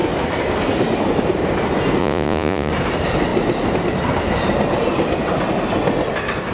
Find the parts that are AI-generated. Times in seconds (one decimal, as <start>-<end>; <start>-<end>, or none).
2.0-2.7